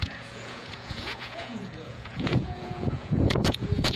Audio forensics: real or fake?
fake